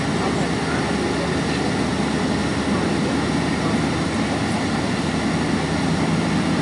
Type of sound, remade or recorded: recorded